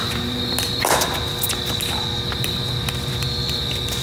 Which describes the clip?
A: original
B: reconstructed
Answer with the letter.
A